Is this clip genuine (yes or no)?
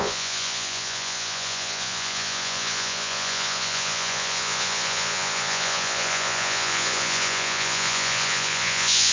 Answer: no